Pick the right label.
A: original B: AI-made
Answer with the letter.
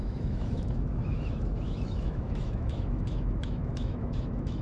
B